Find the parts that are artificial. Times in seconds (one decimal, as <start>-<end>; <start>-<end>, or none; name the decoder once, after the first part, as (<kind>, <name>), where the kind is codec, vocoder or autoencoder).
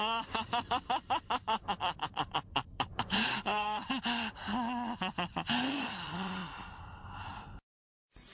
0.0-3.9 (vocoder, BigVGAN v2)